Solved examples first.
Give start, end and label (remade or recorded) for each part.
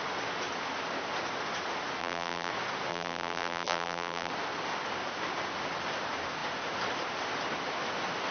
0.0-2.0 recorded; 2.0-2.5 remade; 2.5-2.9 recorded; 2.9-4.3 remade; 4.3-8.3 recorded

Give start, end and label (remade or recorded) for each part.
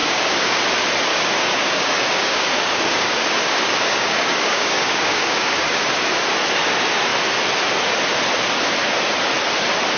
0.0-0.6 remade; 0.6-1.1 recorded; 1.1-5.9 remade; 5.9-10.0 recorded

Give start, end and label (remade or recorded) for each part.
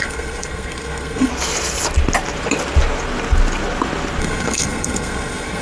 0.0-1.3 remade; 1.3-4.2 recorded; 4.2-5.6 remade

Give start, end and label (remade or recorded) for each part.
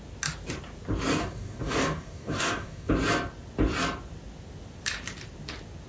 0.0-1.2 recorded; 1.2-2.9 remade; 2.9-5.9 recorded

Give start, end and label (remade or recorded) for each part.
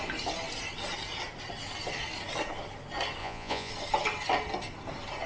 0.0-3.2 recorded; 3.2-3.7 remade; 3.7-5.3 recorded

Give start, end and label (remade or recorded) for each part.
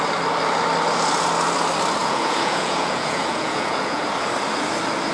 0.0-2.0 recorded; 2.0-4.0 remade; 4.0-5.1 recorded